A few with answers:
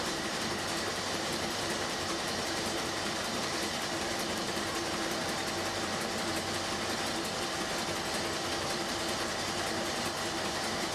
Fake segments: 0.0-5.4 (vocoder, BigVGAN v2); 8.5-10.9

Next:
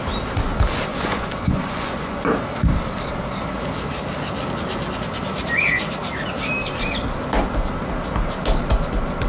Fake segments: 0.9-2.2 (vocoder, Vocos)

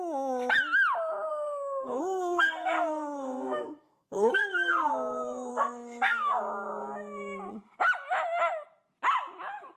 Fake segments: 1.3-4.9 (codec, SNAC); 5.5-6.4

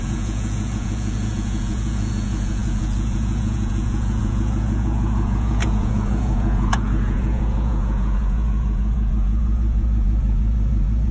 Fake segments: 0.0-11.1 (vocoder, Vocos)

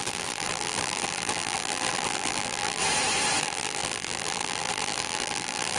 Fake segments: 0.0-2.8 (vocoder, BigVGAN v2); 3.4-5.8

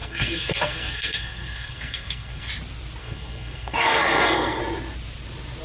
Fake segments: 0.0-2.5 (codec, SNAC); 3.0-4.6

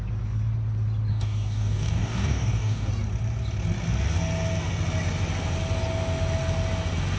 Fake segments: 1.1-2.9 (codec, DAC)

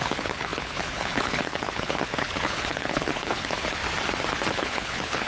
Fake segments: 0.0-3.8 (codec, HILCodec); 4.5-5.3